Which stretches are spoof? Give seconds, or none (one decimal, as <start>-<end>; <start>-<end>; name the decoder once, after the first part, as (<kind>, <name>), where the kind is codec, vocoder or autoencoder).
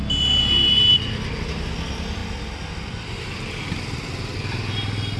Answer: none